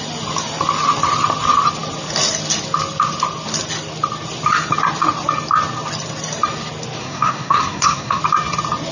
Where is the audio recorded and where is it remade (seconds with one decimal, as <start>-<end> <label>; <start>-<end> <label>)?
0.0-7.0 recorded; 7.0-8.2 remade; 8.2-8.9 recorded